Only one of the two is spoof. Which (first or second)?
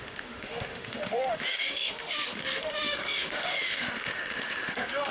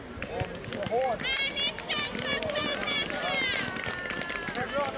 first